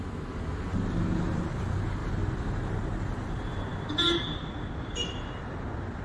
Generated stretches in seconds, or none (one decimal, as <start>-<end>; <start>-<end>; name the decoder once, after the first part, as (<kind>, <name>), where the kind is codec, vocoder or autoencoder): none